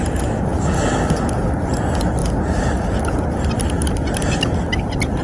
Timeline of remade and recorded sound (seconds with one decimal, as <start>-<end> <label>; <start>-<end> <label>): 0.0-5.2 recorded

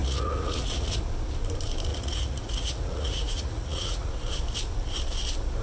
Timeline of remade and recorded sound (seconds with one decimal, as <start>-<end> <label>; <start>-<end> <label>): 0.0-1.0 remade; 1.0-1.9 recorded; 1.9-4.1 remade; 4.1-5.6 recorded

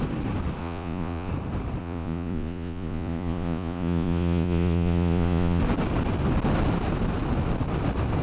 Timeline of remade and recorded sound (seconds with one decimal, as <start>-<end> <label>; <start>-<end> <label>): 0.0-0.6 recorded; 0.6-1.3 remade; 1.3-1.8 recorded; 1.8-5.6 remade; 5.6-8.2 recorded

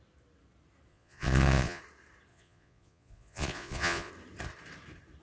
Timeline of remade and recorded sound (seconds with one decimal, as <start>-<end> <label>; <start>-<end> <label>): 0.0-0.9 recorded; 0.9-1.8 remade; 1.8-2.3 recorded; 2.3-4.1 remade; 4.1-5.2 recorded

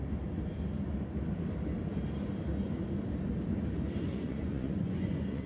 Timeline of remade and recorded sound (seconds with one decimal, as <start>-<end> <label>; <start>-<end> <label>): 0.0-4.1 recorded; 4.1-5.5 remade

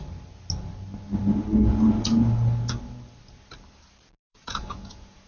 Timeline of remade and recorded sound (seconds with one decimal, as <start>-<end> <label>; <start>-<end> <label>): 0.0-4.2 recorded; 4.2-5.3 remade

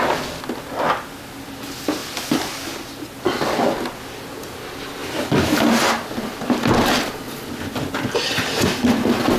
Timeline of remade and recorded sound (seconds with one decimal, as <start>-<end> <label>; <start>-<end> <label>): 0.0-9.4 recorded